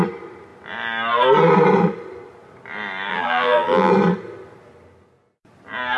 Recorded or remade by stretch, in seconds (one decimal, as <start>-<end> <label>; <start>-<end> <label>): 0.0-3.1 recorded; 3.1-3.9 remade; 3.9-6.0 recorded